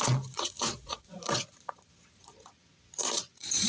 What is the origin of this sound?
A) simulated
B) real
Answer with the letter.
A